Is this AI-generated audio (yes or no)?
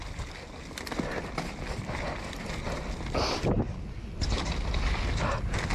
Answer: no